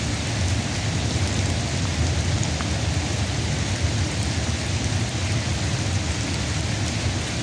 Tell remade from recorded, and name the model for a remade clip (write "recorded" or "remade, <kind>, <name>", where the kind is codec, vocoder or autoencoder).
recorded